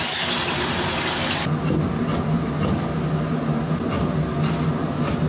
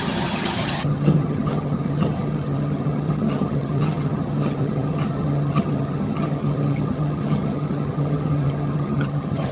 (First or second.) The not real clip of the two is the second